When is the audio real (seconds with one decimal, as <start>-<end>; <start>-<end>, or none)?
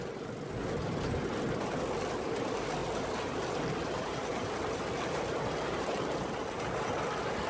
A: 0.0-4.3